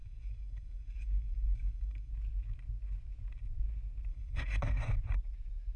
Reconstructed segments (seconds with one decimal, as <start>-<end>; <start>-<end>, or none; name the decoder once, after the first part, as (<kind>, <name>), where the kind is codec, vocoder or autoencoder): 0.0-2.1 (codec, DAC); 4.1-4.6